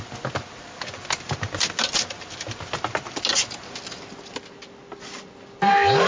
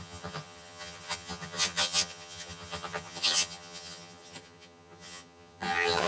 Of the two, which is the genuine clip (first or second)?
first